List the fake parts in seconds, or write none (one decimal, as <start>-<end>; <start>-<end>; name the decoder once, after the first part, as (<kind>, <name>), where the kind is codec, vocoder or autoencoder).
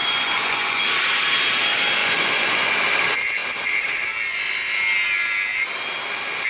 0.0-0.8 (vocoder, Vocos); 2.0-2.7